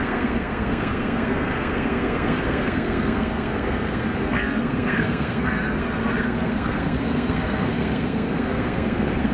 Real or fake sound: fake